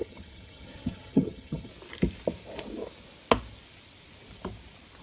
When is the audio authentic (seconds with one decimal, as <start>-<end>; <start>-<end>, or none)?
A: 1.7-5.0